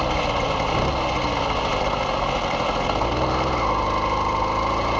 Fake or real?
real